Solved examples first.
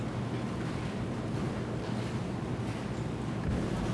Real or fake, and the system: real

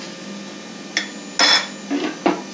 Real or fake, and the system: real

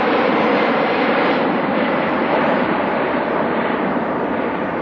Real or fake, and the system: fake, vocoder, BigVGAN v2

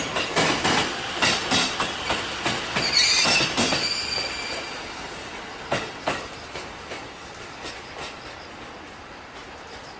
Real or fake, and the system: real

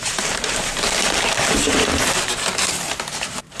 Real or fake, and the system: fake, vocoder, BigVGAN v2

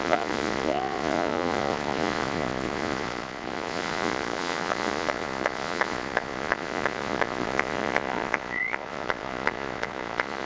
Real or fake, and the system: fake, vocoder, Vocos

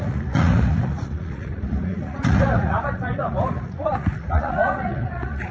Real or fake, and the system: fake, vocoder, Vocos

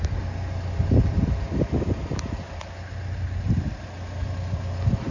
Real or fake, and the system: real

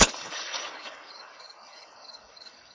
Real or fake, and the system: fake, codec, DAC